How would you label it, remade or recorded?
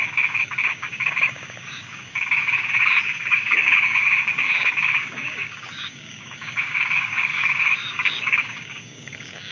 remade